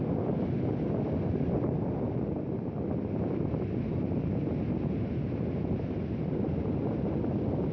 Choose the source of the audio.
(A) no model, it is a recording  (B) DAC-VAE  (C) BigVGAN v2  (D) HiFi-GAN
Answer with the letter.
A